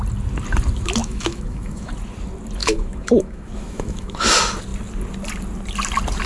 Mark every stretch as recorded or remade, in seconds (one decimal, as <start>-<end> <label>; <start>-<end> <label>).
0.0-1.0 recorded; 1.0-1.9 remade; 1.9-2.6 recorded; 2.6-4.2 remade; 4.2-6.3 recorded